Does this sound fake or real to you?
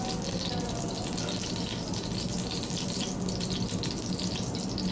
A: real